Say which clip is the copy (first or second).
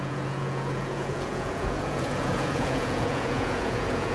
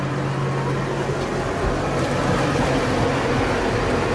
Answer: first